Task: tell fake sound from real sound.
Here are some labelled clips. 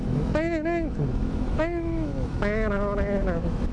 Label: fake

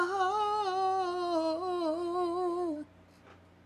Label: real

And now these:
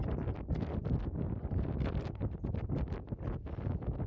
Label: real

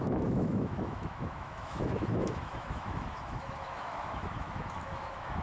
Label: fake